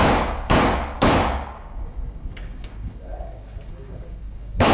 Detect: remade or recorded remade